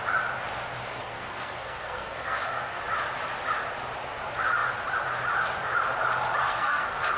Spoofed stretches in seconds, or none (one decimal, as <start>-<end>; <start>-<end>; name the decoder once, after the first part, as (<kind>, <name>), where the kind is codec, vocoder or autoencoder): 0.9-2.8 (codec, SNAC); 6.4-7.2